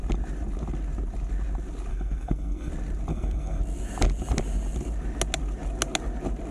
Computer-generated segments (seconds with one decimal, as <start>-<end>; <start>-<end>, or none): 1.9-2.7; 3.1-3.6